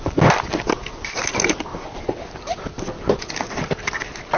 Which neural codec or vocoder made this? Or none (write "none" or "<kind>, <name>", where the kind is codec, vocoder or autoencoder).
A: none